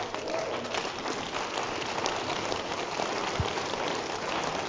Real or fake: real